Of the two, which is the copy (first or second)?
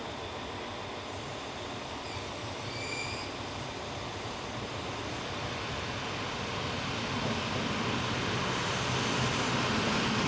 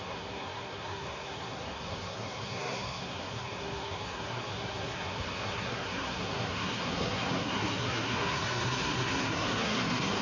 second